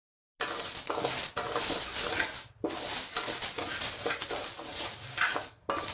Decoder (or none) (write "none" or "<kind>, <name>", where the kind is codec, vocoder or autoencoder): none